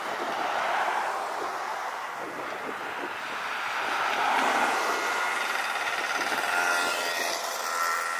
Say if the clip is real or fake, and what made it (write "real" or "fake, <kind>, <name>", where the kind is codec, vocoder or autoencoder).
real